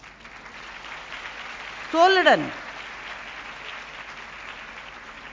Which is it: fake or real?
real